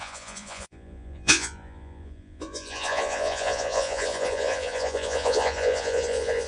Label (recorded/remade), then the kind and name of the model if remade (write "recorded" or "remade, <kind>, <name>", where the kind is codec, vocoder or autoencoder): remade, vocoder, Vocos